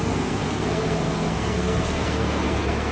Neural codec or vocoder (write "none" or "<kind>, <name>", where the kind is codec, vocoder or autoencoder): codec, SNAC